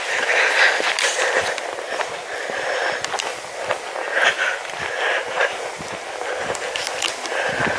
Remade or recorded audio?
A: recorded